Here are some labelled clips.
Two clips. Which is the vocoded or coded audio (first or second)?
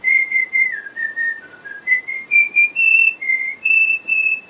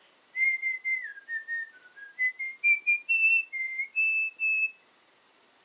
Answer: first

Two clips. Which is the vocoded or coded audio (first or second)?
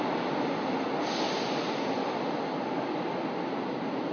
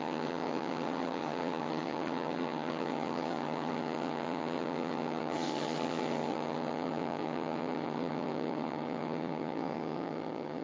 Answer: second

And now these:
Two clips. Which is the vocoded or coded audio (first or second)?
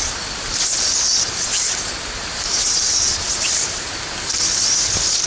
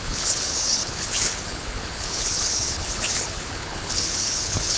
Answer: second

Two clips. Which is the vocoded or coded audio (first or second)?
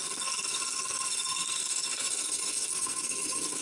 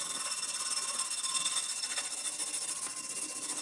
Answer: first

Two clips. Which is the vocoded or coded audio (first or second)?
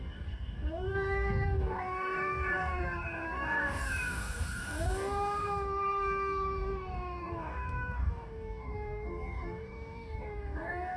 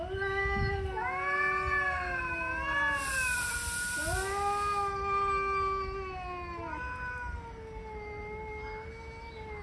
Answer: first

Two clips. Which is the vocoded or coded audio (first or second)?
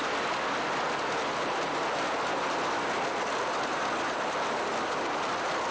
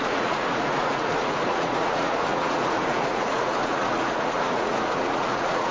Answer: second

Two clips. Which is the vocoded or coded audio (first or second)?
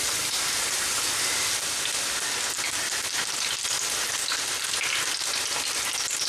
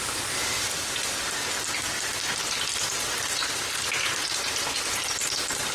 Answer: second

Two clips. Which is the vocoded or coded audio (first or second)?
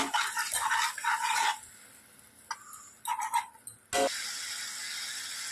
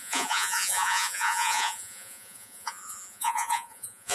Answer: second